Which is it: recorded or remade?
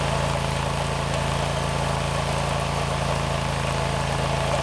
recorded